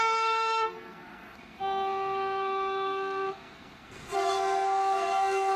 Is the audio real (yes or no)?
no